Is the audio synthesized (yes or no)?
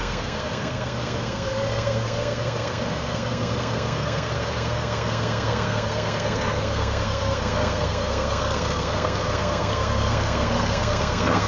yes